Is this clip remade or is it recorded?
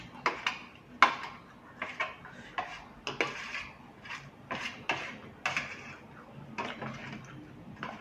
recorded